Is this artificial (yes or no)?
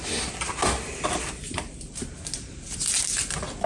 no